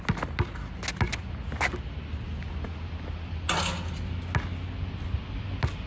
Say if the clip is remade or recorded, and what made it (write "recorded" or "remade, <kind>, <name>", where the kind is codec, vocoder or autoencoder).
recorded